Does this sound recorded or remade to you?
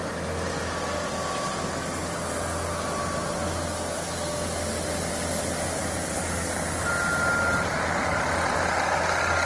recorded